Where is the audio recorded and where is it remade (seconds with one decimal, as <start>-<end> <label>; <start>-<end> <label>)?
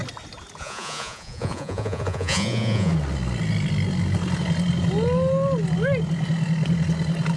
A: 0.0-0.6 recorded; 0.6-2.9 remade; 2.9-7.4 recorded